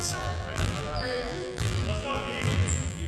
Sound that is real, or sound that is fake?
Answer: fake